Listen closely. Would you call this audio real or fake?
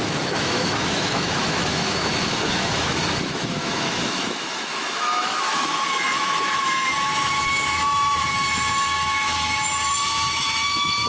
fake